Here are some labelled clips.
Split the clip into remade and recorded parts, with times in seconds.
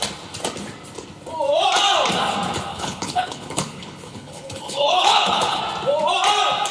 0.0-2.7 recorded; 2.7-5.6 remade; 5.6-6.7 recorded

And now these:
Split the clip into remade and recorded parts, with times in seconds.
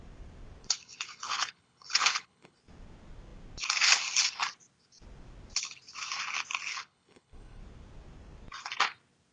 0.0-0.6 recorded; 0.6-2.6 remade; 2.6-6.7 recorded; 6.7-7.6 remade; 7.6-9.3 recorded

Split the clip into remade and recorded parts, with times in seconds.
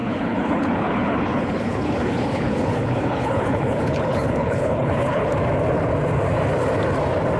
0.0-5.3 remade; 5.3-7.4 recorded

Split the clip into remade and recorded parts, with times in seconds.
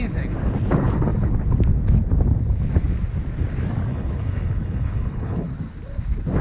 0.0-3.9 recorded; 3.9-5.5 remade; 5.5-6.4 recorded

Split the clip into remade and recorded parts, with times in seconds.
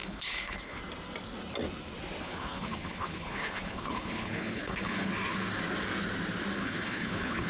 0.0-0.8 remade; 0.8-2.2 recorded; 2.2-5.1 remade; 5.1-6.6 recorded; 6.6-7.5 remade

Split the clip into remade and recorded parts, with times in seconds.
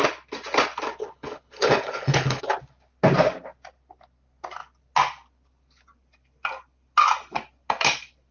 0.0-1.0 recorded; 1.0-2.4 remade; 2.4-8.3 recorded